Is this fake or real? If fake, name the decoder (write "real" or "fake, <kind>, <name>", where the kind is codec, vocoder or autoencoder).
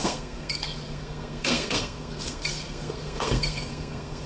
fake, codec, SNAC